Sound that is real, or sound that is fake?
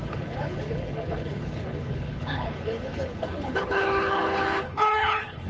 fake